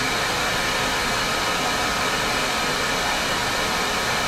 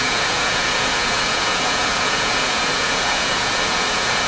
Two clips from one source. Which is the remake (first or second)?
second